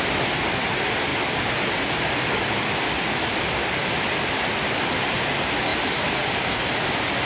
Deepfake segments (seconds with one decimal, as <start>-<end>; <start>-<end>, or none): none